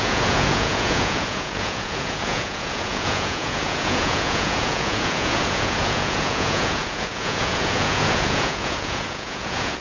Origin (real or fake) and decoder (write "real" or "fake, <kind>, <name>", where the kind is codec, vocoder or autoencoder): fake, vocoder, Vocos